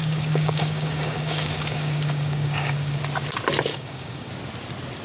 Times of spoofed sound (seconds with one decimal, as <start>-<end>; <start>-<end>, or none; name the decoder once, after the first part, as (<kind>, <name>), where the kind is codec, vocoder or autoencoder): 0.0-3.0 (codec, DAC); 3.7-4.3